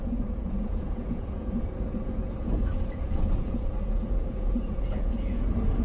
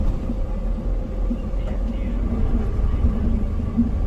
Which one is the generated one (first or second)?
first